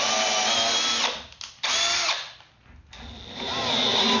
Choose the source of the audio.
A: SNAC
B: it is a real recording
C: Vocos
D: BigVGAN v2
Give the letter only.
B